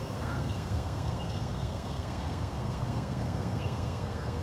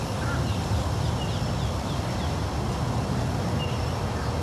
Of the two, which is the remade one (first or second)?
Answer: first